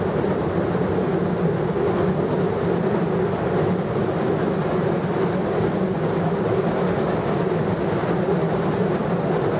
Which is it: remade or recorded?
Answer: recorded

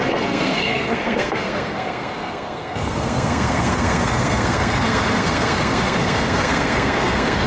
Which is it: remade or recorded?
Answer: remade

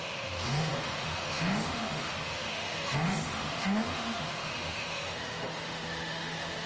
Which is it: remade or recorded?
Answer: remade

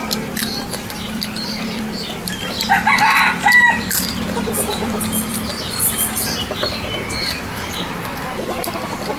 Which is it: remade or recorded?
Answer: remade